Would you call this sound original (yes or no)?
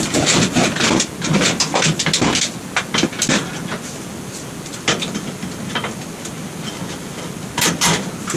yes